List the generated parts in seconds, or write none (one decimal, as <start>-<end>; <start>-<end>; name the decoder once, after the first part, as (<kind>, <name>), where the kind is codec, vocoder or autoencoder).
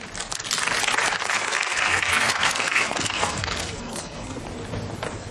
1.2-4.4 (codec, SNAC)